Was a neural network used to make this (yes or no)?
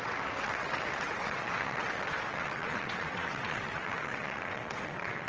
yes